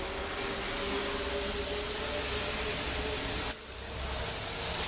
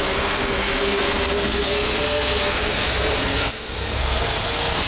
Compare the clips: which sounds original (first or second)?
first